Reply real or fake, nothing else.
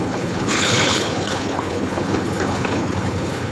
fake